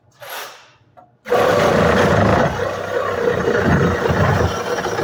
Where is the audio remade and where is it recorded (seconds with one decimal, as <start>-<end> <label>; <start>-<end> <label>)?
0.0-5.0 recorded